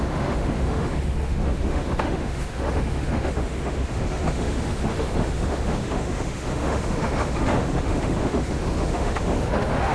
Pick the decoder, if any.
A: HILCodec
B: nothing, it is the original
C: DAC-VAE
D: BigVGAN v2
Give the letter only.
C